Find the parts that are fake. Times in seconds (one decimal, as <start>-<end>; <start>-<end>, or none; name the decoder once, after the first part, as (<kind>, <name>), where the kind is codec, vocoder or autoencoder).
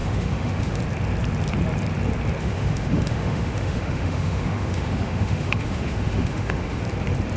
0.0-0.8 (autoencoder, DAC-VAE); 2.4-6.8